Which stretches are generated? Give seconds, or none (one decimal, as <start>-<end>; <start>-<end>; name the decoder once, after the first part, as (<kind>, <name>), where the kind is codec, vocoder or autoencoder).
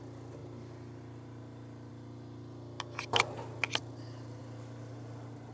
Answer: none